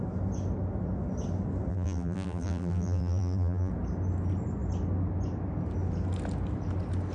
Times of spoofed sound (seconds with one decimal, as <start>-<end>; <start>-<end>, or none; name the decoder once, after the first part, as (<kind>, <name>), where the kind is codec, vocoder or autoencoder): 1.7-3.7 (vocoder, BigVGAN v2)